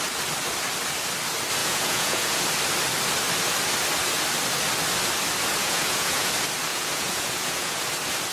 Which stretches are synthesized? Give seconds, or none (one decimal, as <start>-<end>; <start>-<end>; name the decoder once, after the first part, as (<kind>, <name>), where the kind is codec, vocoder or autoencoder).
1.6-2.4 (vocoder, Vocos); 5.6-6.3; 6.7-7.8